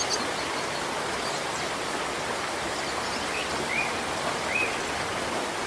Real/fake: real